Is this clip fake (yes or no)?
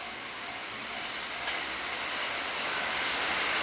no